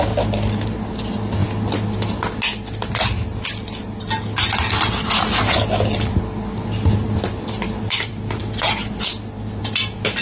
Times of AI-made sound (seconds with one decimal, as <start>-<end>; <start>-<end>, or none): 7.0-8.4